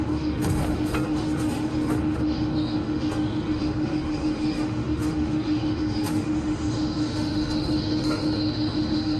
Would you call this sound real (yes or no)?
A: no